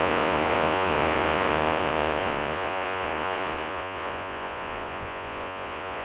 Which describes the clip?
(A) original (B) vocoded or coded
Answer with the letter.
B